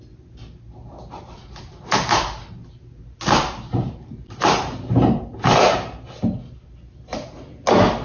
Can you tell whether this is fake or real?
real